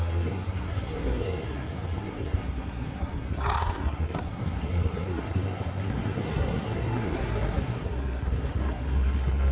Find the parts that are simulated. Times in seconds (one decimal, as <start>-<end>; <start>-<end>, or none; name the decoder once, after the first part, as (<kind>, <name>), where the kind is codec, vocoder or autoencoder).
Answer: 0.0-9.5 (codec, SNAC)